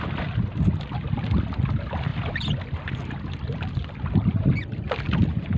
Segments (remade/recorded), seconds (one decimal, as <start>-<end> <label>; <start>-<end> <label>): 0.0-5.6 recorded